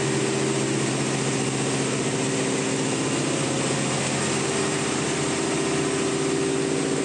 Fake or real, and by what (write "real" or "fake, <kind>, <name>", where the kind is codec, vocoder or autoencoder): real